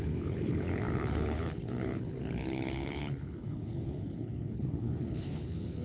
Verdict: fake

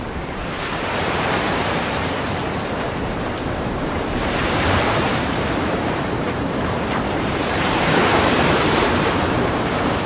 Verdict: fake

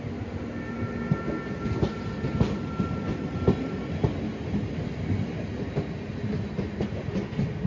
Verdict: real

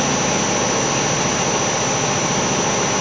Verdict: real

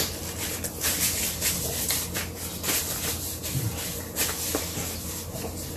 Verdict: real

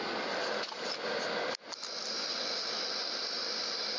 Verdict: real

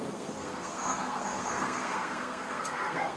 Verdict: fake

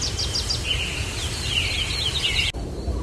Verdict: real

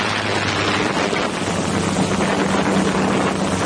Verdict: real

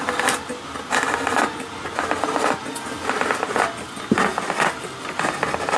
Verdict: real